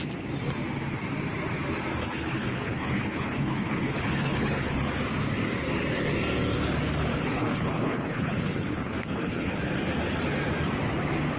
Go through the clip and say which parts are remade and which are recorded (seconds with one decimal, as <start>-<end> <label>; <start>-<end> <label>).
0.0-2.0 recorded; 2.0-4.8 remade; 4.8-7.1 recorded; 7.1-9.6 remade; 9.6-11.4 recorded